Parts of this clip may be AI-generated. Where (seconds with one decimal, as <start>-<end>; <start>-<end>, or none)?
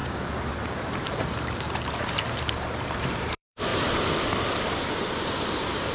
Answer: 0.0-3.7; 4.5-5.9